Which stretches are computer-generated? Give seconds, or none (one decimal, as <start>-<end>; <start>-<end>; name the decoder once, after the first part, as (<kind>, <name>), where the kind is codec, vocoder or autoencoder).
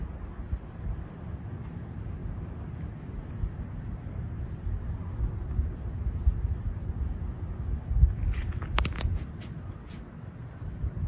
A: none